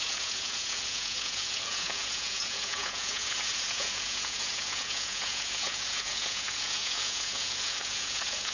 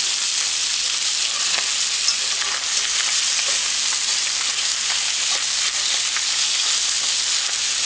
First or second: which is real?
second